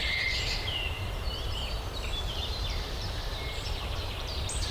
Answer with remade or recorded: remade